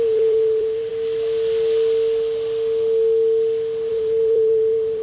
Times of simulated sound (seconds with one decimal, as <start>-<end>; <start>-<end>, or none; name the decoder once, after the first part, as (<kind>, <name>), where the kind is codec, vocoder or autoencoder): 0.0-0.9 (vocoder, BigVGAN v2); 3.9-5.0